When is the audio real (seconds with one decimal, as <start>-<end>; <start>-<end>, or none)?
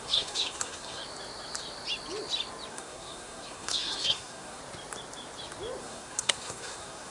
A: 1.0-2.7; 4.6-5.8